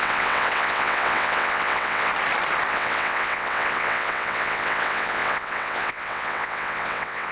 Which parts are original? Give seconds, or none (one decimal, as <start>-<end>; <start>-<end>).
2.1-2.7